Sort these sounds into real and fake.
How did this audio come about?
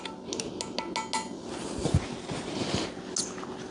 real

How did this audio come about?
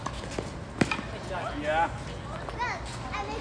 real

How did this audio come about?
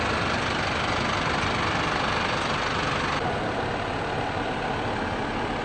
real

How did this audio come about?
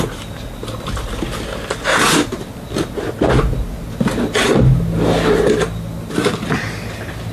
real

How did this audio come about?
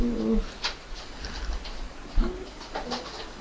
real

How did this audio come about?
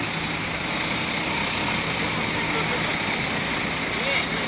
real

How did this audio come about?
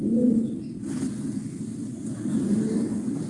real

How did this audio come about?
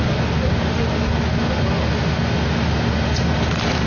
real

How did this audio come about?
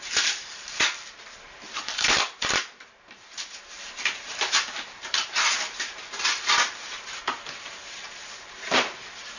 fake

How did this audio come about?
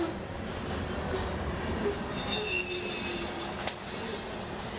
real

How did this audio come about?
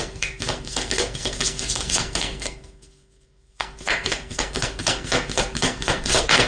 fake